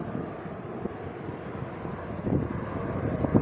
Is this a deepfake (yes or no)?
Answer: no